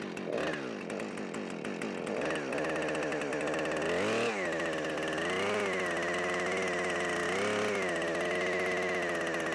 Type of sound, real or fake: real